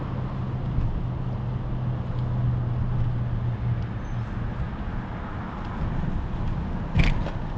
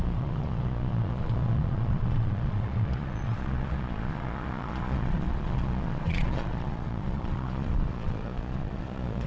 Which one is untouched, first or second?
first